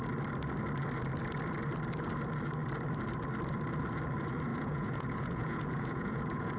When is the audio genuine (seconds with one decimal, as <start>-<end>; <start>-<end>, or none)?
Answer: 0.0-4.5